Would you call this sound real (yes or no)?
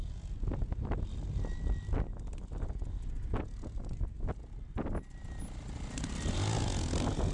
yes